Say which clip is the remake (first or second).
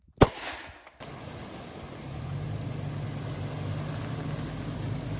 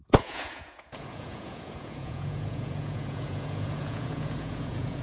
second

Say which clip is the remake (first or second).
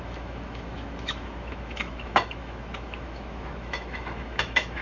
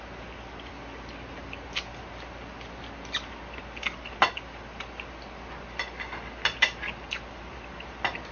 first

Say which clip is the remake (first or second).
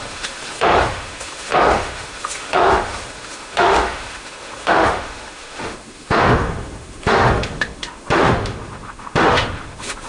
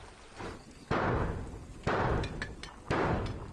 first